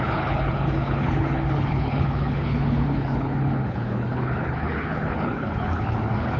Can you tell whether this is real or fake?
fake